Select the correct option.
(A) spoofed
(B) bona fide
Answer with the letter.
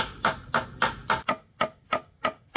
B